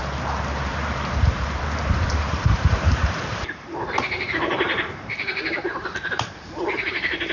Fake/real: fake